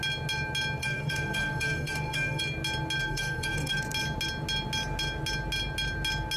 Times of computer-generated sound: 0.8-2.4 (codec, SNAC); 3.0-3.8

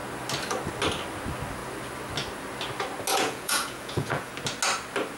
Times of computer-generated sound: 3.1-4.3 (vocoder, Vocos)

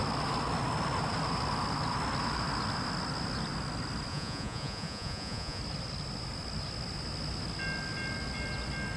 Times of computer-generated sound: 4.1-5.6 (vocoder, Vocos)

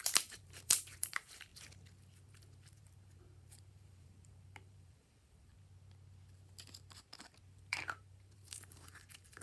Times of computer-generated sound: 0.0-1.5 (vocoder, BigVGAN v2); 2.3-5.5; 7.6-9.4